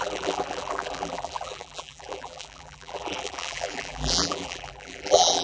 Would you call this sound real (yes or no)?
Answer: no